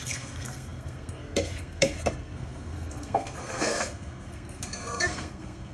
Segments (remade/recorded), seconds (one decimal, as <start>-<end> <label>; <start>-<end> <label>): 0.0-5.7 remade